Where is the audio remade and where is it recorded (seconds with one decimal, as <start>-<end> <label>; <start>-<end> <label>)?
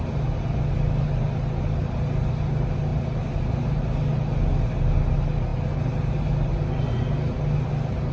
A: 0.0-8.1 recorded